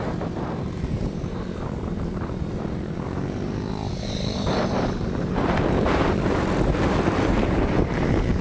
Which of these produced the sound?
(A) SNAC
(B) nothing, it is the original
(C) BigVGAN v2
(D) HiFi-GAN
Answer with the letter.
C